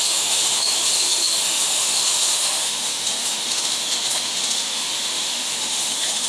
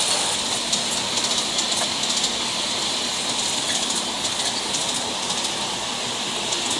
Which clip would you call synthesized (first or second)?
first